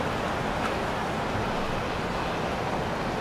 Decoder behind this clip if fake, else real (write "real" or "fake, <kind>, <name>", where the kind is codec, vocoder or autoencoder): real